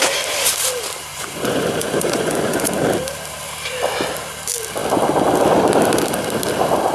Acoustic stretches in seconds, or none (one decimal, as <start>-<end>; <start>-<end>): 0.0-1.1; 2.7-6.9